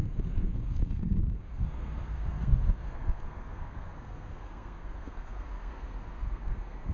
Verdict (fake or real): fake